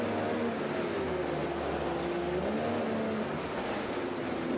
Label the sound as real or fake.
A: real